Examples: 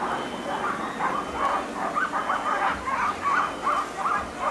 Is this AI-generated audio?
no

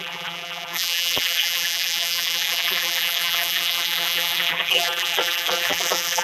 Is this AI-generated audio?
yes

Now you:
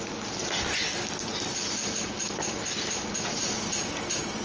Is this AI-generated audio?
no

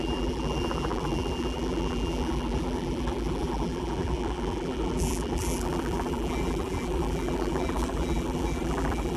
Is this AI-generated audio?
yes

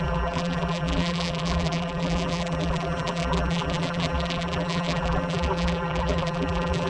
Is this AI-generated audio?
yes